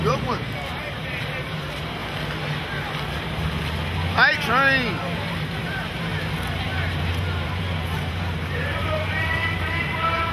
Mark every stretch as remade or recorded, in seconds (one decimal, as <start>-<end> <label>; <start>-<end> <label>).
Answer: 0.0-2.0 remade; 2.0-5.6 recorded; 5.6-6.1 remade; 6.1-7.0 recorded; 7.0-10.3 remade